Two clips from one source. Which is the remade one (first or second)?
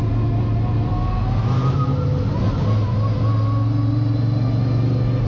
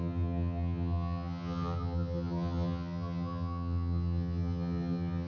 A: second